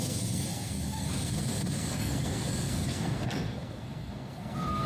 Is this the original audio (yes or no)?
no